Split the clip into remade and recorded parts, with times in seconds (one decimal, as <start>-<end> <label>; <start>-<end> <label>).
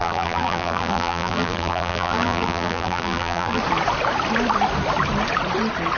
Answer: 0.0-3.6 remade; 3.6-6.0 recorded